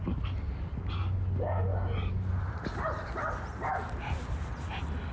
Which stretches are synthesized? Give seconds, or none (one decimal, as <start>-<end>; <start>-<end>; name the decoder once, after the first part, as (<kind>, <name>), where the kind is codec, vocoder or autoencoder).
none